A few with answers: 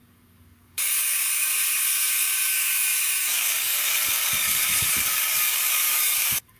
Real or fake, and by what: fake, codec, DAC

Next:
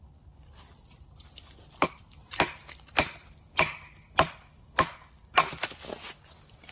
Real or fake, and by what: real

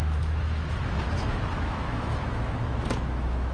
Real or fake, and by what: fake, autoencoder, DAC-VAE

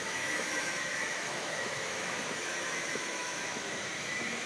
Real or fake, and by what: fake, autoencoder, DAC-VAE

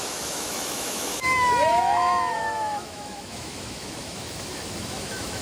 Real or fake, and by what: fake, autoencoder, DAC-VAE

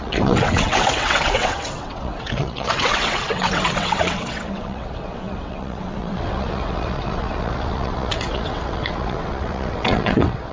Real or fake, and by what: fake, vocoder, WaveNeXt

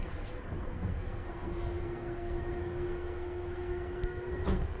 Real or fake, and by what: fake, codec, SNAC